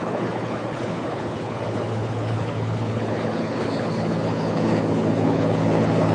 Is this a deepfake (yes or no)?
yes